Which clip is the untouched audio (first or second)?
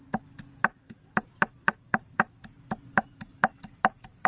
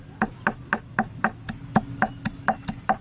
second